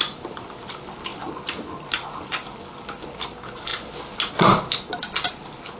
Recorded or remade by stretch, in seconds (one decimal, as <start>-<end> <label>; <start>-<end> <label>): 0.0-5.8 recorded